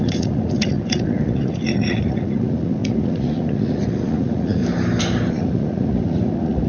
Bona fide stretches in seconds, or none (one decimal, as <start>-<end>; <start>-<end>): 4.6-5.3

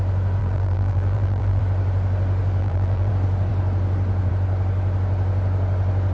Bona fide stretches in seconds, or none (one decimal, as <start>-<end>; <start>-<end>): 0.0-0.4; 1.6-2.6; 3.1-6.1

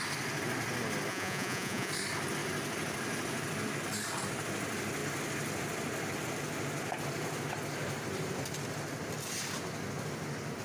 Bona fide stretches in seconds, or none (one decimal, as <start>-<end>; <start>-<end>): 0.0-1.1; 1.9-10.6